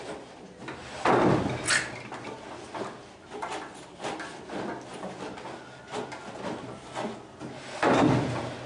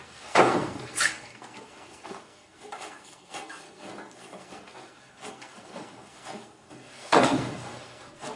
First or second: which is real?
first